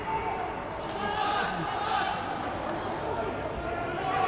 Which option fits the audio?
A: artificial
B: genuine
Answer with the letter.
B